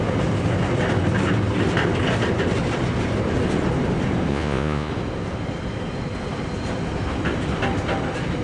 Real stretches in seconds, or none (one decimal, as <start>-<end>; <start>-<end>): 0.0-4.3; 4.9-8.4